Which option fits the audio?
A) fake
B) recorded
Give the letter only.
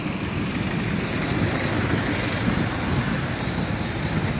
B